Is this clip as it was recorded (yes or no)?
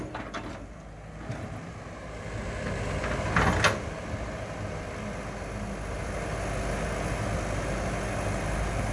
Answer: yes